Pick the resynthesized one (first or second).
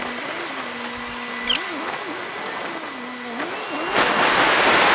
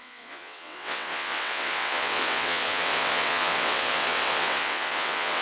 second